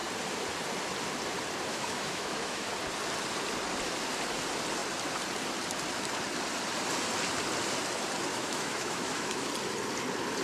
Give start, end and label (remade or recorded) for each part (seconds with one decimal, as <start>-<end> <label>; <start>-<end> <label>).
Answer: 0.0-1.7 recorded; 1.7-2.7 remade; 2.7-8.3 recorded; 8.3-9.5 remade; 9.5-10.4 recorded